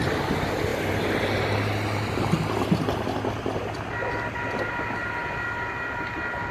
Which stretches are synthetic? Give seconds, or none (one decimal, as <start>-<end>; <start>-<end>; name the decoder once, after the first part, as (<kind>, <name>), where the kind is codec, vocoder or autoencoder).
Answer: none